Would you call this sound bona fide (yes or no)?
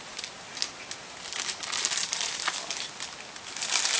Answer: yes